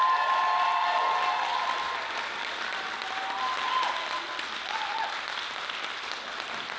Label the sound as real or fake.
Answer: real